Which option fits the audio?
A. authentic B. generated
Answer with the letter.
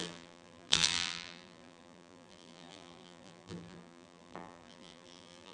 B